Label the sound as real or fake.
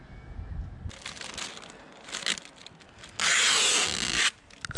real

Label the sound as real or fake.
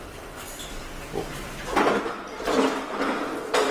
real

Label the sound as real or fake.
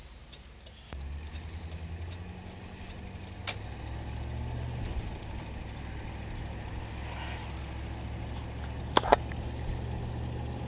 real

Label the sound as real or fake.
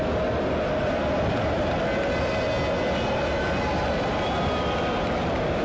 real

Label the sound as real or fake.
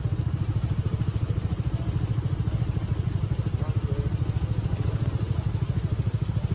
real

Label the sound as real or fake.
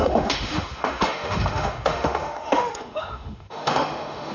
fake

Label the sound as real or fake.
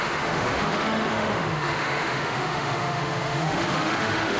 fake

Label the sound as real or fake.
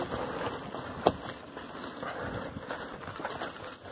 real